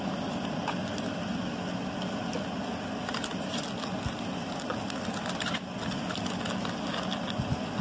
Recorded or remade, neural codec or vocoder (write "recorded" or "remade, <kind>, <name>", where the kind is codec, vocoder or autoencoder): recorded